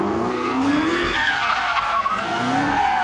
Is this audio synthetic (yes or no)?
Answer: yes